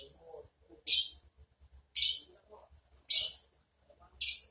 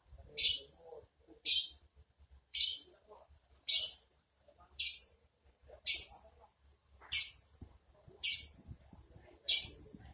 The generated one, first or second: second